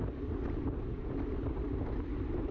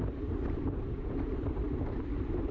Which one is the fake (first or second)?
second